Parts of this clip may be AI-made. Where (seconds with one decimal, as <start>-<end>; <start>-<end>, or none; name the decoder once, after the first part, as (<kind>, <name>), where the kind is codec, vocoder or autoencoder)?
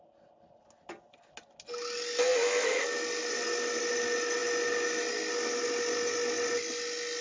none